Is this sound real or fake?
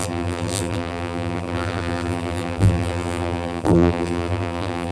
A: fake